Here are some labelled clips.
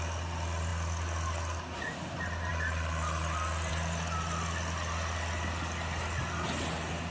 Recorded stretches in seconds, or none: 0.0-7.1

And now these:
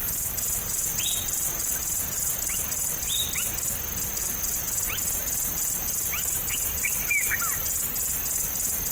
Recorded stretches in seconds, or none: 1.8-8.9

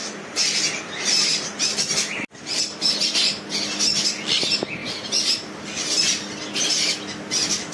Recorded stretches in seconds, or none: 1.7-7.7

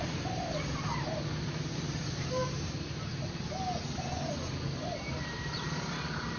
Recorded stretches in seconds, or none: 3.1-4.9

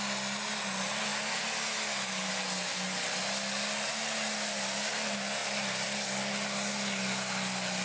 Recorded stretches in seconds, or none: 0.0-5.4; 6.2-7.8

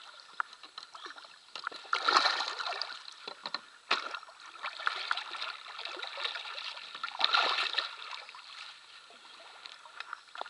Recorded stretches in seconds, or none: 0.0-10.5

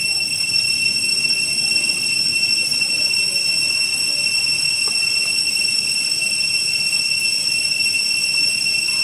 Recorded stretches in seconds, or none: 0.0-9.0